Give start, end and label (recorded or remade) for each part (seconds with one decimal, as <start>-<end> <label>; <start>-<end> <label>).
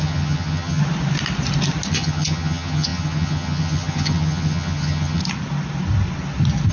0.0-0.8 remade; 0.8-1.9 recorded; 1.9-5.2 remade; 5.2-6.7 recorded